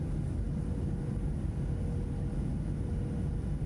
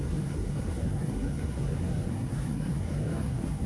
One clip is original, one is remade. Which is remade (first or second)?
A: second